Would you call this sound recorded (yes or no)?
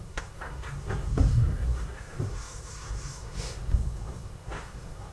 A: no